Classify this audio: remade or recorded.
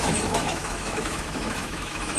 remade